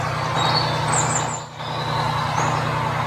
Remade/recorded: recorded